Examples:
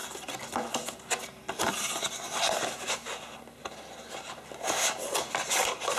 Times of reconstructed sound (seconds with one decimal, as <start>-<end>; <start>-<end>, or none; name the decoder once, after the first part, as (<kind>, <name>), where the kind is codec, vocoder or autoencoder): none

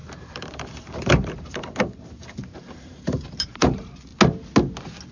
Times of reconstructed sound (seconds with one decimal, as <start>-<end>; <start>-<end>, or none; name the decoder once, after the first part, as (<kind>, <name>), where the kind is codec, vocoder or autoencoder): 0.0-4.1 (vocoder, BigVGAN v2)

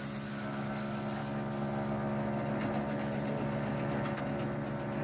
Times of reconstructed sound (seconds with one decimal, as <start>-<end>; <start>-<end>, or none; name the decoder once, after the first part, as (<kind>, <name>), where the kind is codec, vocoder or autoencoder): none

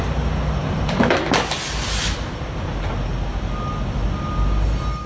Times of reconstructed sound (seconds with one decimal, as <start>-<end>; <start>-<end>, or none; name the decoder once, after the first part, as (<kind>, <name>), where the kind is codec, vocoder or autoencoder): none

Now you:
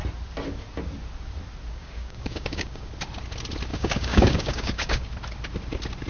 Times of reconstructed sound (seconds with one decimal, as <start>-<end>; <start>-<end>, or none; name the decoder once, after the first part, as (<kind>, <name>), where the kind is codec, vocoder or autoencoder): 1.7-2.9 (codec, DAC); 3.7-5.1